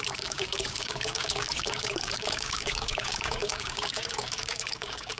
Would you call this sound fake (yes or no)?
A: yes